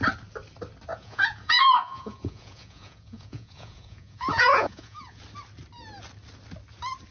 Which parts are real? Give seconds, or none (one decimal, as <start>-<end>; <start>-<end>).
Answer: 0.0-0.9; 5.2-7.1